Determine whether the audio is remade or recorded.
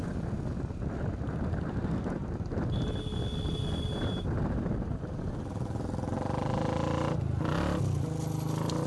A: recorded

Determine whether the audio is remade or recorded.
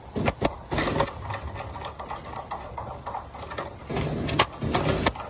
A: recorded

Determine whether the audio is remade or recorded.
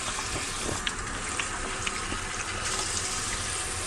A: recorded